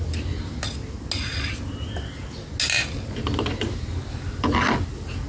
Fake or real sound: real